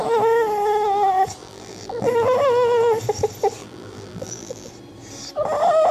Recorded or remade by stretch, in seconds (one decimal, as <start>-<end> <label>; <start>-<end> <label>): 0.0-1.4 recorded; 1.4-2.1 remade; 2.1-3.6 recorded; 3.6-4.7 remade; 4.7-5.9 recorded

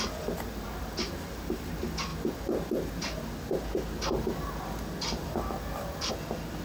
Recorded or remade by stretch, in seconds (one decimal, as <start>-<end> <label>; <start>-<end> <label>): 0.0-6.6 recorded

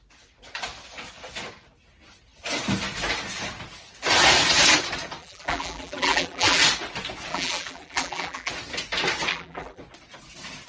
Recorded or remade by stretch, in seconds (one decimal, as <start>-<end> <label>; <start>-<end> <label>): 0.0-5.2 recorded; 5.2-6.6 remade; 6.6-7.3 recorded; 7.3-8.5 remade; 8.5-9.3 recorded; 9.3-9.8 remade; 9.8-10.7 recorded

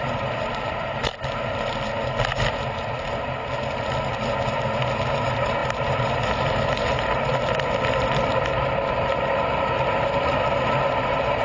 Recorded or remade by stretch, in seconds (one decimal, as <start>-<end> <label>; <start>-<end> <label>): 0.0-1.1 remade; 1.1-5.1 recorded; 5.1-7.3 remade; 7.3-11.0 recorded; 11.0-11.4 remade

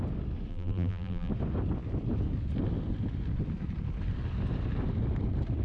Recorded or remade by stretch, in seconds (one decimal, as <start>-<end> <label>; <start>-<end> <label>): 0.0-0.5 recorded; 0.5-1.3 remade; 1.3-5.6 recorded

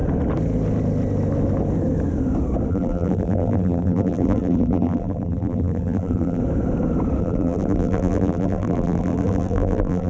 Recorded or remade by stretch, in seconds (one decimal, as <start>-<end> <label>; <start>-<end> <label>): 0.0-2.7 recorded; 2.7-6.4 remade; 6.4-7.2 recorded; 7.2-10.1 remade